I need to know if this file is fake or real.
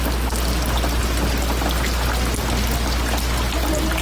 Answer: real